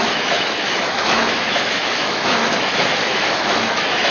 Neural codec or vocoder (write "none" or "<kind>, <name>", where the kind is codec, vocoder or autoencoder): autoencoder, DAC-VAE